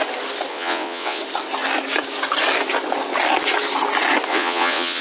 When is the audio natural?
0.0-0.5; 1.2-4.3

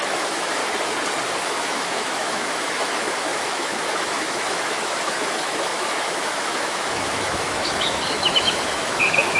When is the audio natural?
0.6-1.4